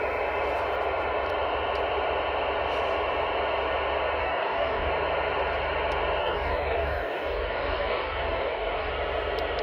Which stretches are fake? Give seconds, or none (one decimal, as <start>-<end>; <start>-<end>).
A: 4.2-4.9; 6.2-8.9